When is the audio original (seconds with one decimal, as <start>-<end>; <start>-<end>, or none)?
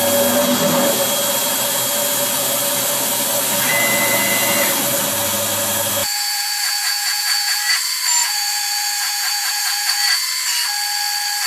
0.0-6.0; 7.8-8.2; 10.2-11.5